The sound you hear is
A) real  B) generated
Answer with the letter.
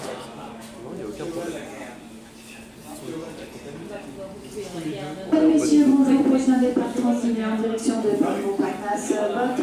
A